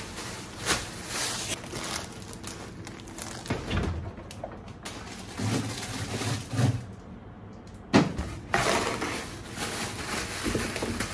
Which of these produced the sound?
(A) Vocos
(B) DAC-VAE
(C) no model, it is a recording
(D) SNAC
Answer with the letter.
C